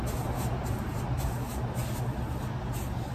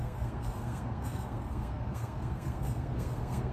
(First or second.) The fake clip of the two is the second